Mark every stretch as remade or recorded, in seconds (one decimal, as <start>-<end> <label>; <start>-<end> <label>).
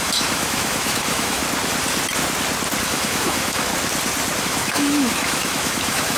0.0-1.4 remade; 1.4-2.8 recorded; 2.8-3.7 remade; 3.7-4.4 recorded; 4.4-6.2 remade